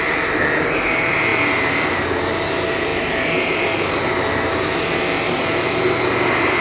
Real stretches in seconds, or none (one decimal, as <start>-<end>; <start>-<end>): 0.0-6.6